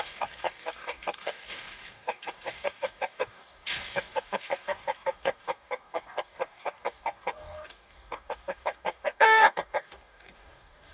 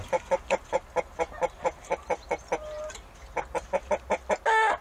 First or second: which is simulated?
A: first